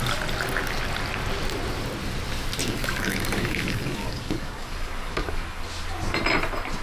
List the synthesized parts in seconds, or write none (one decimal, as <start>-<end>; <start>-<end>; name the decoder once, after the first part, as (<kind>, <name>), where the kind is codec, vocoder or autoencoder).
2.6-5.6 (codec, DAC)